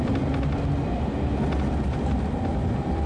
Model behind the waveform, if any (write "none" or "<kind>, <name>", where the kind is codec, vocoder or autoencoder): none